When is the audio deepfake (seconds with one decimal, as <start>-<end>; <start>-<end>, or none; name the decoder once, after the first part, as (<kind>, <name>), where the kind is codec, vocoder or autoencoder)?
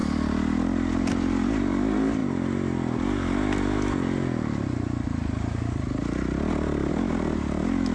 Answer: none